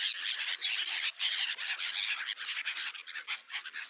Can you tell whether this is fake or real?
real